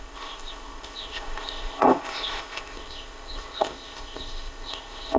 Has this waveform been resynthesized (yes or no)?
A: yes